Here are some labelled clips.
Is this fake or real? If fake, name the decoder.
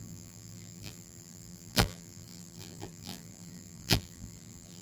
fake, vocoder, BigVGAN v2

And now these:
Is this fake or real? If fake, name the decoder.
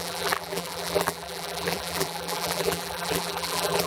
fake, vocoder, BigVGAN v2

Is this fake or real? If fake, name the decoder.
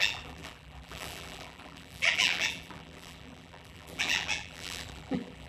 fake, vocoder, BigVGAN v2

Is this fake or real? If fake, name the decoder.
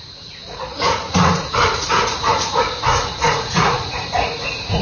fake, vocoder, Vocos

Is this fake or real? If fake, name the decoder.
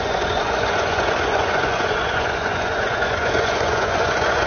fake, vocoder, Vocos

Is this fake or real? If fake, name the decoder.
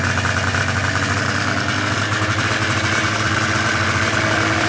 real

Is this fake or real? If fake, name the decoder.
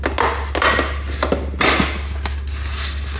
real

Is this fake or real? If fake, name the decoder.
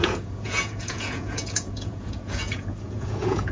fake, vocoder, Vocos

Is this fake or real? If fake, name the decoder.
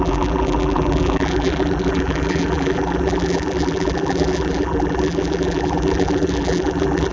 fake, vocoder, BigVGAN v2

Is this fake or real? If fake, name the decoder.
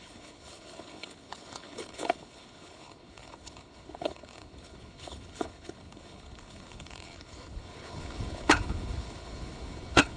fake, codec, HILCodec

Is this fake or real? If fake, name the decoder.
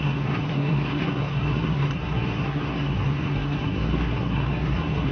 fake, codec, SNAC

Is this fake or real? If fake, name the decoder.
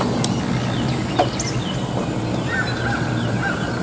real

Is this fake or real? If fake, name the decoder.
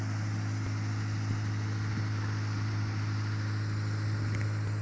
real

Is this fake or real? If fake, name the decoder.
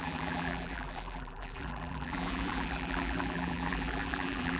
fake, vocoder, BigVGAN v2